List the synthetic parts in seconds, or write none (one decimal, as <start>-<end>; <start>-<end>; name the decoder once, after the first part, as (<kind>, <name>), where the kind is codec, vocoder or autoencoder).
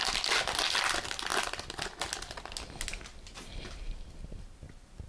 none